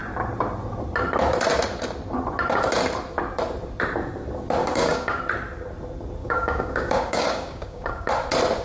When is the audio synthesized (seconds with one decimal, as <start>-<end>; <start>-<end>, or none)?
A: 4.6-5.2; 6.2-8.1